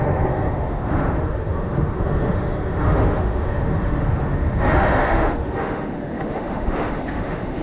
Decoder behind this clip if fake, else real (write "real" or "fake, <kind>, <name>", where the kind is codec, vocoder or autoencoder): fake, autoencoder, DAC-VAE